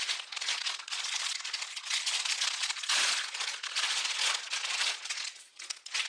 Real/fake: fake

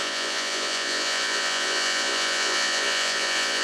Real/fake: fake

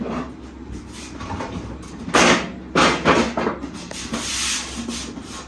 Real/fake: real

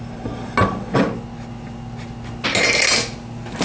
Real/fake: real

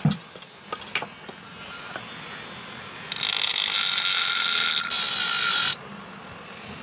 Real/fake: real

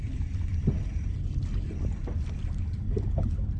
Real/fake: real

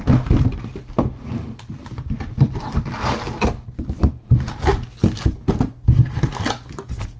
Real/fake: real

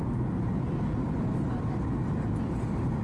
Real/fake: real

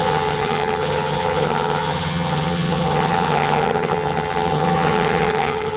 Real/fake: fake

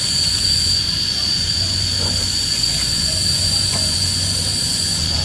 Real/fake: fake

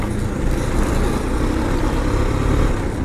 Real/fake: real